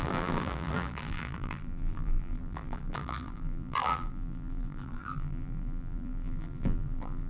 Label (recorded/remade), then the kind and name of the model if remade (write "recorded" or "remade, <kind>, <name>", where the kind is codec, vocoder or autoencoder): remade, vocoder, BigVGAN v2